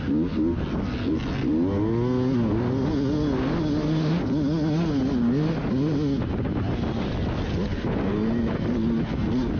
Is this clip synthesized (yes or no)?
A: no